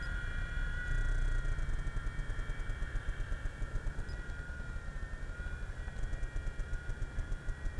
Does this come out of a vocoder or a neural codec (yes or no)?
no